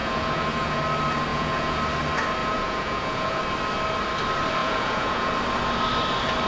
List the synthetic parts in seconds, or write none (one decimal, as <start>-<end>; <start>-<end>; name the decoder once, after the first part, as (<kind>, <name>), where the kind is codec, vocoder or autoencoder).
0.0-0.8 (vocoder, Vocos); 1.3-1.8; 2.4-3.4; 4.6-5.3